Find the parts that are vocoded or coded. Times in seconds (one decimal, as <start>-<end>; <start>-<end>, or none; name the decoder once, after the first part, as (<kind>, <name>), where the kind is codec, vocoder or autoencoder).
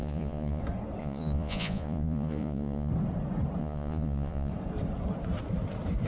0.0-0.6 (vocoder, Vocos); 1.0-2.9; 3.6-4.5